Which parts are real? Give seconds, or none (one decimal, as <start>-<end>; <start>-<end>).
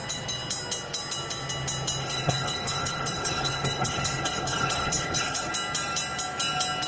0.0-2.0; 5.5-6.9